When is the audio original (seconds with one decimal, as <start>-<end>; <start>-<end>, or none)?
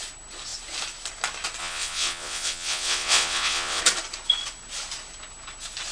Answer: 0.0-1.6; 3.8-5.9